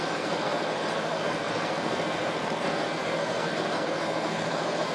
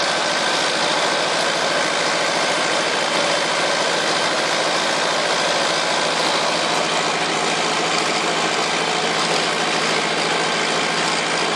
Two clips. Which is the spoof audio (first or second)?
first